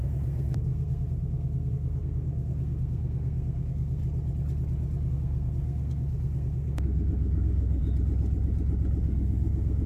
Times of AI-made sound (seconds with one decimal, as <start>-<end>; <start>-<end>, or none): 0.0-4.0; 5.1-7.8; 9.0-9.9

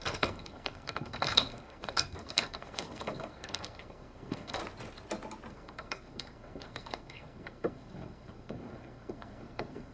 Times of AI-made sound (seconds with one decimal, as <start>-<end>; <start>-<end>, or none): 0.0-4.6; 5.5-9.9

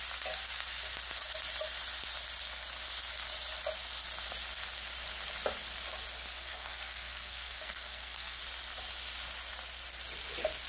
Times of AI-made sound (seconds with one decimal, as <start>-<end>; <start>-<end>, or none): 6.5-8.4